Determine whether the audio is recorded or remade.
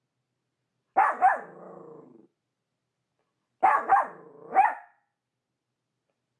recorded